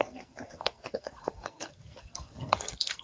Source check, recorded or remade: remade